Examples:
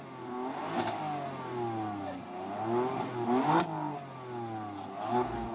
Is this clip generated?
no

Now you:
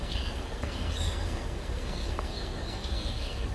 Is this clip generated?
yes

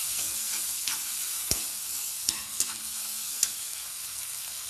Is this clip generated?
yes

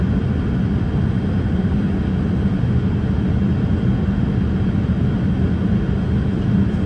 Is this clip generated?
no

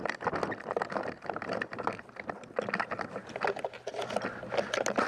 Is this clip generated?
no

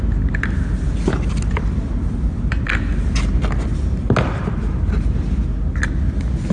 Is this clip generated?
no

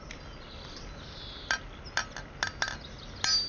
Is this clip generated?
no